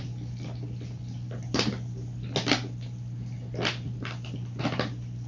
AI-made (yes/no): no